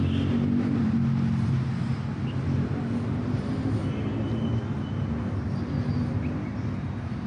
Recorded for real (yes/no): yes